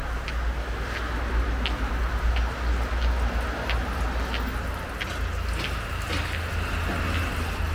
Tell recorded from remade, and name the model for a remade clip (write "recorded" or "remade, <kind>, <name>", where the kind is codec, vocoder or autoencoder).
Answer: recorded